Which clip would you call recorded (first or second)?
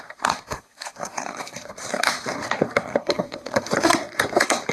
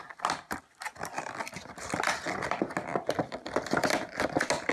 second